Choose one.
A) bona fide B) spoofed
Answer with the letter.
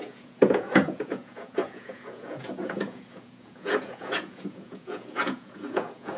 B